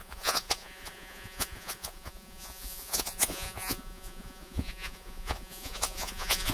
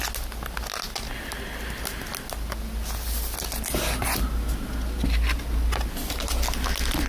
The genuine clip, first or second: second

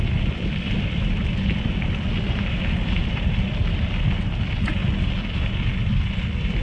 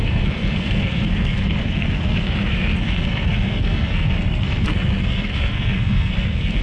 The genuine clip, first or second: first